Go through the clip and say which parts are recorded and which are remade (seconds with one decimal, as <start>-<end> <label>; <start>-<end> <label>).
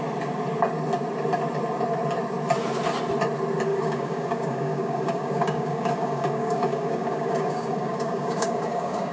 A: 0.0-3.7 recorded; 3.7-9.1 remade